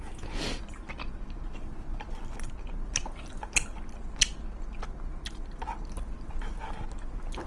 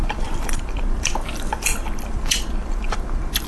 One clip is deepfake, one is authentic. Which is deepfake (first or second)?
second